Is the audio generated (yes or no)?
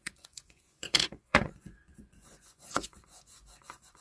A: yes